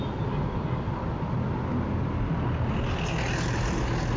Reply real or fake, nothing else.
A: real